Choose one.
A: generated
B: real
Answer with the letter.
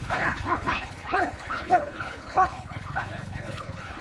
A